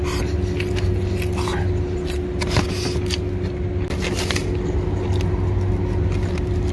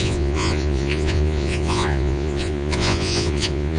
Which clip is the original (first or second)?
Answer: first